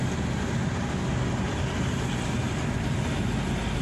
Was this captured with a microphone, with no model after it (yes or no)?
yes